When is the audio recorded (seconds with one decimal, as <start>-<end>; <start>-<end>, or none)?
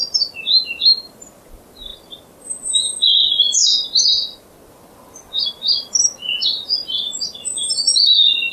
0.0-8.5